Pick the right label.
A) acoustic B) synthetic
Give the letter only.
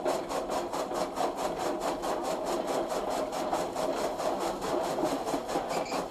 A